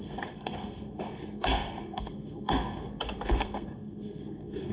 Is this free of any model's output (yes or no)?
no